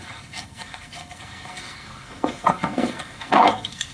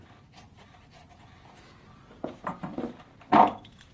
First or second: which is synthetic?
first